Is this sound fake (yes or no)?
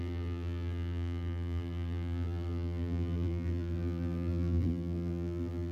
yes